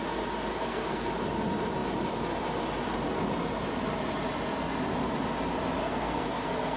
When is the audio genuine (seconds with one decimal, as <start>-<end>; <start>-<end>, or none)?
0.0-0.5; 1.1-5.8